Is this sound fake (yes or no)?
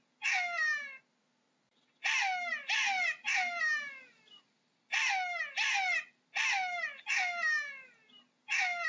no